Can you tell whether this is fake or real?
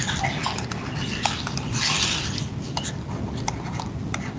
real